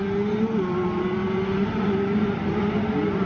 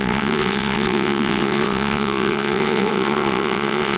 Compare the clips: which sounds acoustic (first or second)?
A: first